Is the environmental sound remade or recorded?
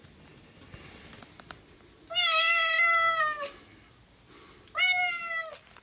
recorded